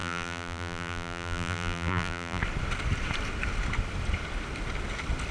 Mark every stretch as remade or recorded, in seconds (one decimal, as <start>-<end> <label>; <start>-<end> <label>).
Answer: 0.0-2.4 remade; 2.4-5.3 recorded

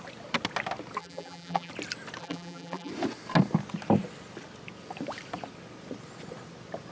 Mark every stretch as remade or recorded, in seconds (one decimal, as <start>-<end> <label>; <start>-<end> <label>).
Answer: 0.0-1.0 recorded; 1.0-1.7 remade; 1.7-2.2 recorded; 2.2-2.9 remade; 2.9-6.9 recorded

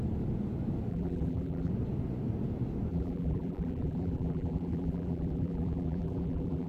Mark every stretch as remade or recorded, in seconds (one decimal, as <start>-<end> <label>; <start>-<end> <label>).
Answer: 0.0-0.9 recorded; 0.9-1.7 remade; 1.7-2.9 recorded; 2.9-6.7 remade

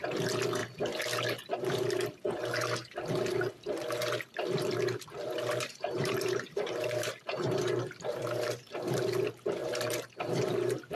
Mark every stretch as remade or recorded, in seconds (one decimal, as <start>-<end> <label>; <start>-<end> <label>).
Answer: 0.0-5.3 recorded; 5.3-9.0 remade; 9.0-9.6 recorded; 9.6-10.9 remade

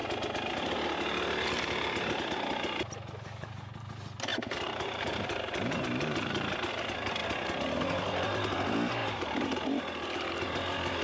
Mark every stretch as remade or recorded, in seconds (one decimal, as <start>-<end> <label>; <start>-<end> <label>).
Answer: 0.0-4.3 recorded; 4.3-6.7 remade; 6.7-9.0 recorded; 9.0-9.8 remade; 9.8-11.0 recorded

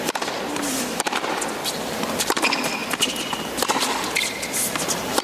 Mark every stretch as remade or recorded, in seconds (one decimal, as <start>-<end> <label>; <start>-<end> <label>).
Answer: 0.0-5.2 remade